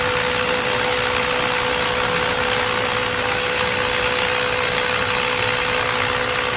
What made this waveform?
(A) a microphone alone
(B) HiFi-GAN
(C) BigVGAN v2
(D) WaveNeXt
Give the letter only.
A